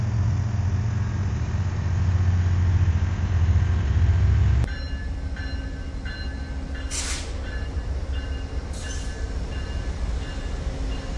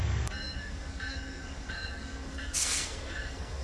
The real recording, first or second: first